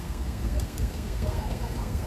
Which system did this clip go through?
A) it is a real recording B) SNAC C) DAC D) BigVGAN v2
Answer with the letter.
B